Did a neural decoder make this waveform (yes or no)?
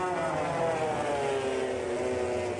no